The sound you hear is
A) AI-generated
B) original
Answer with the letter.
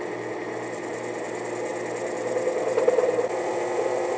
B